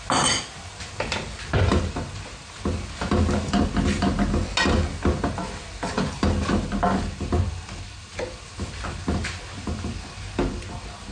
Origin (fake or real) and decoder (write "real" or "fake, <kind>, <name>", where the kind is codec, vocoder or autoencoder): real